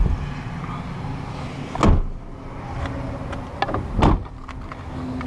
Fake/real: real